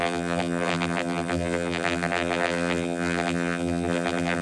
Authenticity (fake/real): fake